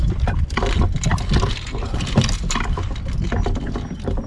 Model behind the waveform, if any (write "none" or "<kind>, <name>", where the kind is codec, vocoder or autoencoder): none